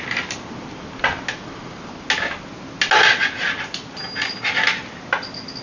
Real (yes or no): yes